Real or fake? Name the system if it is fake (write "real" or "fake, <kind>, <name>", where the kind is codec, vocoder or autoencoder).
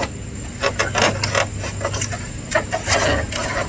real